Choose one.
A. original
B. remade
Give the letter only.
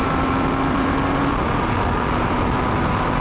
B